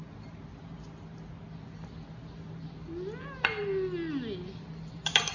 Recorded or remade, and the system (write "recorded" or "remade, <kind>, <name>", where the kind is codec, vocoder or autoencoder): recorded